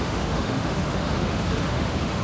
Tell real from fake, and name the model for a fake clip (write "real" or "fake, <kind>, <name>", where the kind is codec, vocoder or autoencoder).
fake, autoencoder, DAC-VAE